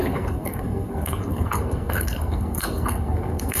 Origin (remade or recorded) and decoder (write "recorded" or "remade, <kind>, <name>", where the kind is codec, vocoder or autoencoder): remade, codec, SNAC